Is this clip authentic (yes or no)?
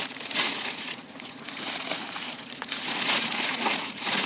no